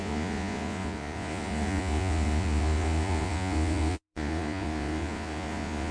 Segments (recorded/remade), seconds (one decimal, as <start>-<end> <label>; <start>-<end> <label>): 0.0-5.9 remade